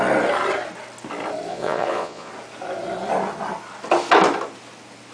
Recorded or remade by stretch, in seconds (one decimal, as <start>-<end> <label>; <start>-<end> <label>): 0.0-1.5 recorded; 1.5-2.3 remade; 2.3-5.1 recorded